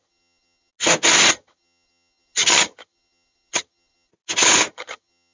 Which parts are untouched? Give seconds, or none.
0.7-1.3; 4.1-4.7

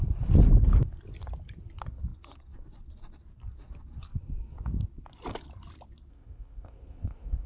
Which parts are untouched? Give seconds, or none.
0.0-6.1

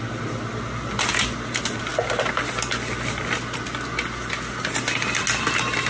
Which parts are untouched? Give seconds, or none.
0.0-5.9

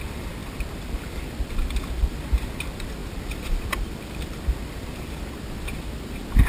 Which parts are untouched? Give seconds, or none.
none

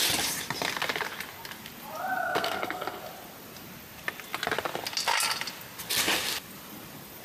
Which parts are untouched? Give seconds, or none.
0.0-2.2; 3.0-7.2

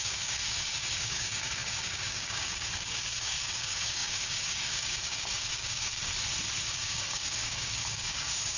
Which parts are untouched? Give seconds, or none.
6.1-6.6